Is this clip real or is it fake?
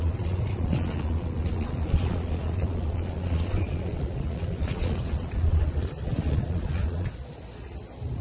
fake